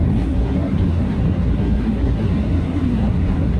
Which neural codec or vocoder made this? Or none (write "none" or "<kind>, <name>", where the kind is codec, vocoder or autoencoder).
codec, SNAC